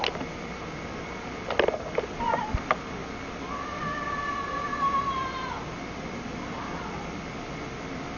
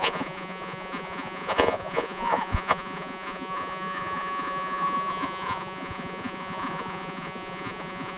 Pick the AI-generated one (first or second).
second